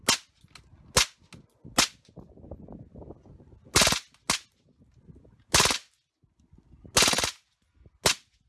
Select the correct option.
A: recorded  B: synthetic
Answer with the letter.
A